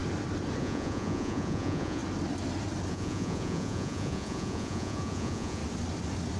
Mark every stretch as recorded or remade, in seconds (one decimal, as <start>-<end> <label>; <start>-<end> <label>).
0.0-0.6 recorded; 0.6-2.0 remade; 2.0-2.9 recorded; 2.9-5.6 remade; 5.6-6.4 recorded